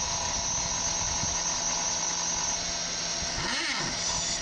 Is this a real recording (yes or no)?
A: yes